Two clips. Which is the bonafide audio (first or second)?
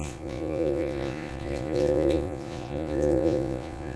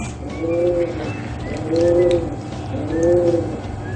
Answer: second